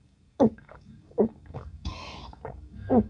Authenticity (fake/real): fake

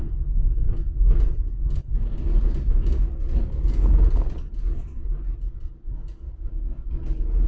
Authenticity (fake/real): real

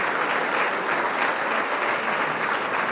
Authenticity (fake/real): real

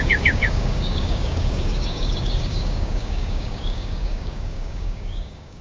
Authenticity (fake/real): fake